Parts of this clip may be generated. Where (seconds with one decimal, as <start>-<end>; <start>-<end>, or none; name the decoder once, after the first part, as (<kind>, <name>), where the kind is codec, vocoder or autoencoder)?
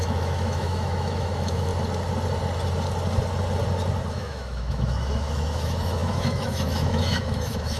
0.0-1.7 (autoencoder, DAC-VAE); 4.1-7.8